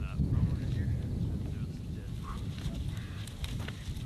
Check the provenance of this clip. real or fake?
real